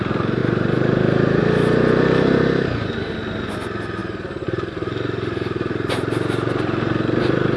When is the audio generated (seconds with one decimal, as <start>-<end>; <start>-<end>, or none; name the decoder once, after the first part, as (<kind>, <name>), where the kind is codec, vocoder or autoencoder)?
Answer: 0.4-1.4 (vocoder, BigVGAN v2); 4.0-4.7